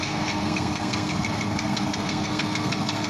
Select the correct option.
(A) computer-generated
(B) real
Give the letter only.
A